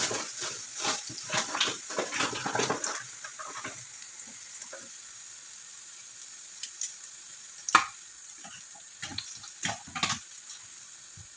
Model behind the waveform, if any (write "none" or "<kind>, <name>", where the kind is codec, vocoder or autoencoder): none